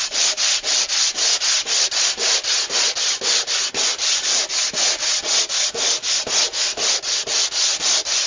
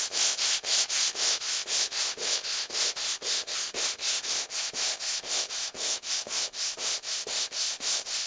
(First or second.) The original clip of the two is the first